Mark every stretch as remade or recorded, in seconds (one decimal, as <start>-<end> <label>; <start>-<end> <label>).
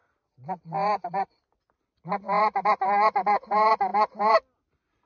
0.0-5.1 recorded